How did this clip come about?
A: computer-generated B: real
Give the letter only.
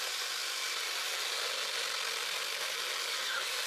B